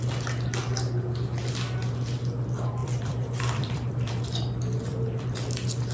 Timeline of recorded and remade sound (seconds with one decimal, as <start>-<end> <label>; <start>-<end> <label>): 0.0-2.8 recorded; 2.8-4.2 remade; 4.2-4.9 recorded; 4.9-5.5 remade; 5.5-5.9 recorded